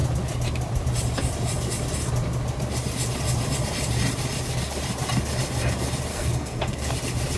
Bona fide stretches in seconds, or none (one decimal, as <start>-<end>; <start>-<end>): 0.0-6.1; 6.9-7.4